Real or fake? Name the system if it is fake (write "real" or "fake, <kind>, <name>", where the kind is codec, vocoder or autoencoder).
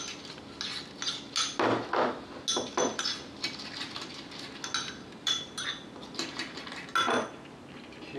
real